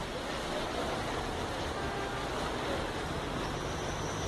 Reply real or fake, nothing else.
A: real